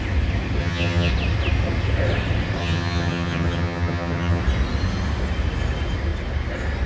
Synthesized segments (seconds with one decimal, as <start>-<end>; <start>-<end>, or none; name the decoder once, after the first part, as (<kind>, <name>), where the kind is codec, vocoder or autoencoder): 0.6-1.1 (vocoder, HiFi-GAN); 2.6-4.4